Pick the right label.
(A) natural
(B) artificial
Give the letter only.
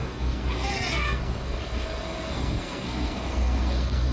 B